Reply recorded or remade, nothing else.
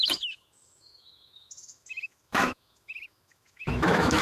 remade